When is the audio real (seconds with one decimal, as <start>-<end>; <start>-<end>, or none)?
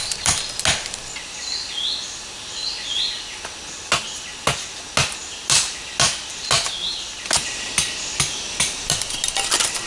0.0-9.9